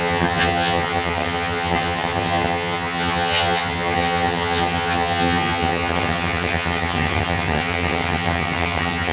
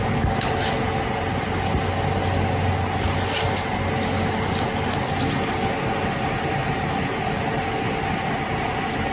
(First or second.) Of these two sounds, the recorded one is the second